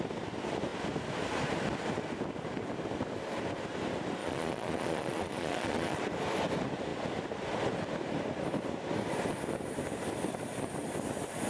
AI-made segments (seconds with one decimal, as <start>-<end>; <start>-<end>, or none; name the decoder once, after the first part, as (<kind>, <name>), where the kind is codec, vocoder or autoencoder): 4.2-6.0 (vocoder, Vocos)